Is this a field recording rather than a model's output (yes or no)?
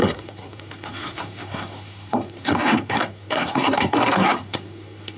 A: no